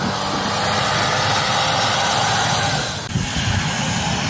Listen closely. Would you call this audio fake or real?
real